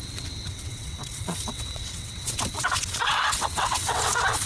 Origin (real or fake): fake